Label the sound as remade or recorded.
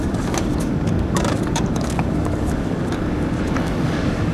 remade